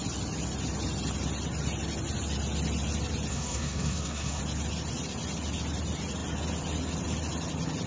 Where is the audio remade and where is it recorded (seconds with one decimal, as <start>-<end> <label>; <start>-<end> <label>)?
0.0-3.3 recorded; 3.3-4.4 remade; 4.4-7.9 recorded